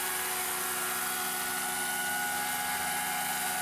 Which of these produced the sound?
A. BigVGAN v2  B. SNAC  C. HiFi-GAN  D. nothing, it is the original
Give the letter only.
D